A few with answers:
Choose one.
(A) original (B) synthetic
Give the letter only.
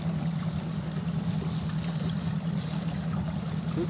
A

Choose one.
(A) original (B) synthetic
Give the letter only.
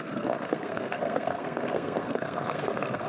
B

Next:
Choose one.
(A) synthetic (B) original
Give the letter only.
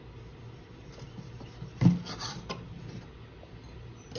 B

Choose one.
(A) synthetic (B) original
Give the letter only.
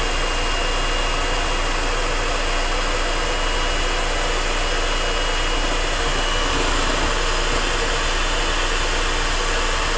B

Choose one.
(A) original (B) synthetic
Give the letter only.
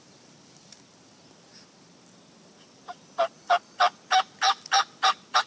A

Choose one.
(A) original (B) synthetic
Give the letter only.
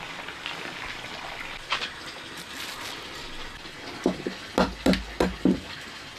A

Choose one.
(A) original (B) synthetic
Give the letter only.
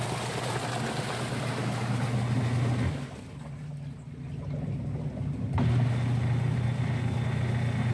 A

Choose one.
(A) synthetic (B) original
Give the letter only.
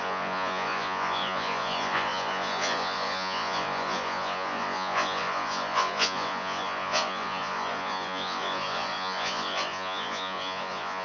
A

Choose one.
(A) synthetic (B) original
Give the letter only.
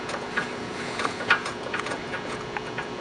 A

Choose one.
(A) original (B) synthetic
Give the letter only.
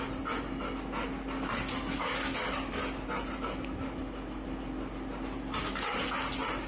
A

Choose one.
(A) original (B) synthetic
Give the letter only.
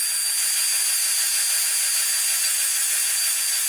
A